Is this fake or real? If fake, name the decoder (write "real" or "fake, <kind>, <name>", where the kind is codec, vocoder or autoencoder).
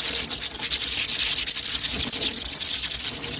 real